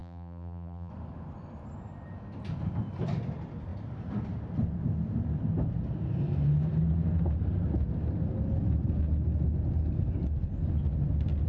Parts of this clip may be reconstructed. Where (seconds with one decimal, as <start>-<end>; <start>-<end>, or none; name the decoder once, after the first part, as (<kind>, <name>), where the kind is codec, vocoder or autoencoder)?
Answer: 0.0-0.9 (vocoder, BigVGAN v2)